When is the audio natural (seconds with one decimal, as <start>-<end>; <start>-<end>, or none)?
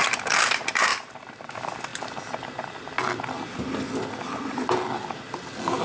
0.0-5.8